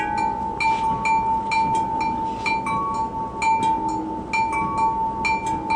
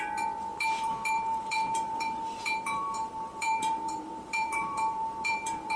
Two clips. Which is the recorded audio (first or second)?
first